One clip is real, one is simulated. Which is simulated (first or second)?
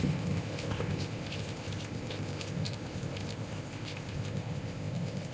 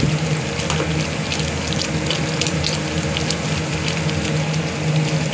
first